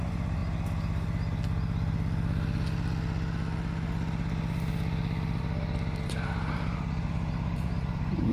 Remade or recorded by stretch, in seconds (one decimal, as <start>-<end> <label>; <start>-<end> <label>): 0.0-0.4 remade; 0.4-5.4 recorded; 5.4-8.3 remade